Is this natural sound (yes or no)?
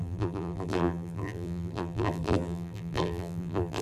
no